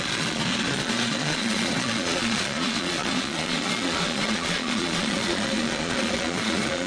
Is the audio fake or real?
fake